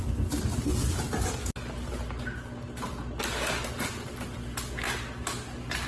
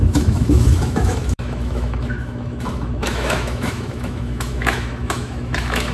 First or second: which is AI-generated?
second